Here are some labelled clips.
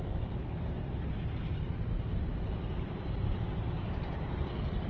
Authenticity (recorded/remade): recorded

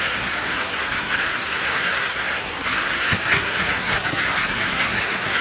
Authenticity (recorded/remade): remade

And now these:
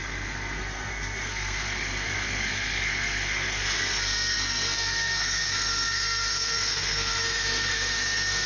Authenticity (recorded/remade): remade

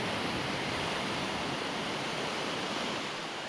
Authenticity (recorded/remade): recorded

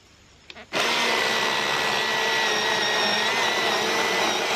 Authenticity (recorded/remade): recorded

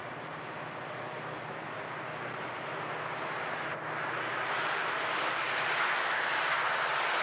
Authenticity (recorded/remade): recorded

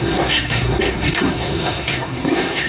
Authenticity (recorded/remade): remade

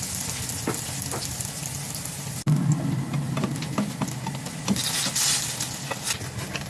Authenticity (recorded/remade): recorded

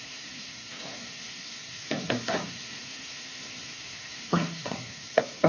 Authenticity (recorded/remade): remade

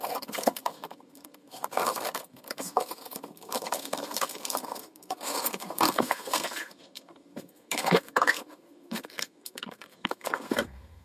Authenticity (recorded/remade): remade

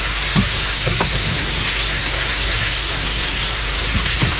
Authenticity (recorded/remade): remade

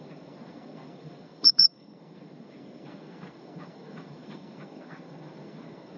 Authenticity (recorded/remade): remade